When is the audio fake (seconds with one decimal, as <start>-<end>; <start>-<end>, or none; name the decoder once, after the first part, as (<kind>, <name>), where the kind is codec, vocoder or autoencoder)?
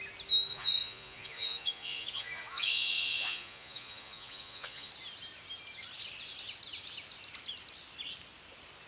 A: 0.5-4.9 (vocoder, Vocos)